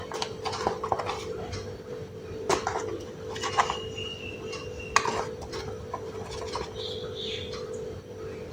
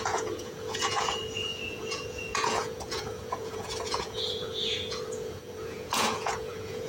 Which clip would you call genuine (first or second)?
first